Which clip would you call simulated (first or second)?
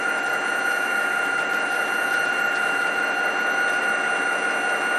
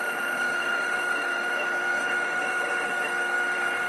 second